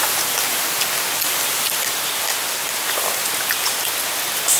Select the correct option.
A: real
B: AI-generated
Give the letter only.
A